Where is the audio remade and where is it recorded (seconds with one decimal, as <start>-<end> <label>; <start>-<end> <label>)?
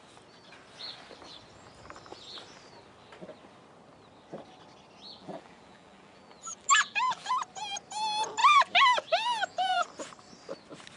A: 0.0-5.2 recorded; 5.2-7.3 remade; 7.3-8.4 recorded; 8.4-9.9 remade; 9.9-11.0 recorded